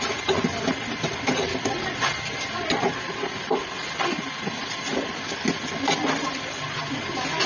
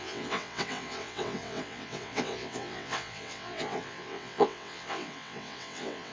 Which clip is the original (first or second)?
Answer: first